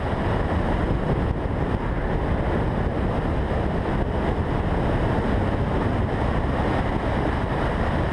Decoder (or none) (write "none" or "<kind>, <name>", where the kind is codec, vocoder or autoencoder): none